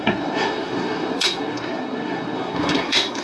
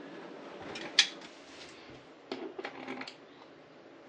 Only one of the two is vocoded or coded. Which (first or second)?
first